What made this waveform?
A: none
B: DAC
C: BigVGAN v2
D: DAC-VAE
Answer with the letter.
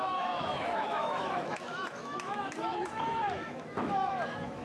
D